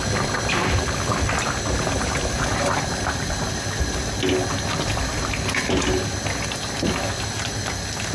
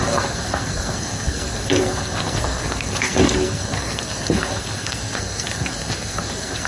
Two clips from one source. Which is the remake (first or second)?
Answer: second